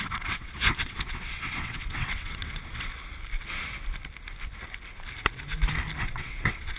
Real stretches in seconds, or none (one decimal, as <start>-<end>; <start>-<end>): 2.9-6.0